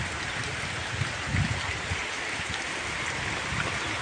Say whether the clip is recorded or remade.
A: recorded